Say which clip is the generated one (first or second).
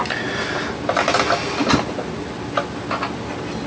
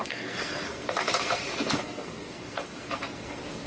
second